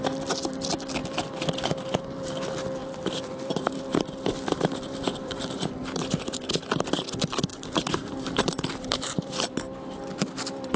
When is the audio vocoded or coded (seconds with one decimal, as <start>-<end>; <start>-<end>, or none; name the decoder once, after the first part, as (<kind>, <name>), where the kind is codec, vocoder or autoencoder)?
2.8-6.9 (vocoder, BigVGAN v2); 7.5-9.5